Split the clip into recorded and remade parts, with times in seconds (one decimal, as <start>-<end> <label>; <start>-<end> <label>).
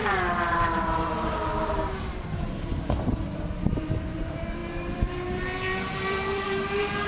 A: 0.0-7.1 remade